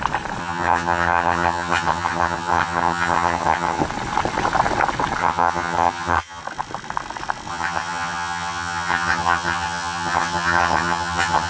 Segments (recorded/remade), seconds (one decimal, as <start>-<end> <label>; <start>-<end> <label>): 0.0-0.4 recorded; 0.4-3.8 remade; 3.8-5.2 recorded; 5.2-6.4 remade; 6.4-7.5 recorded; 7.5-11.5 remade